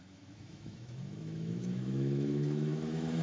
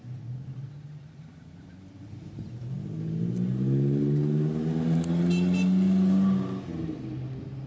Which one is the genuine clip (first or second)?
second